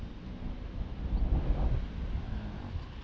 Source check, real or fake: real